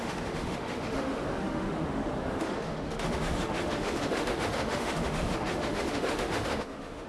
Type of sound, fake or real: fake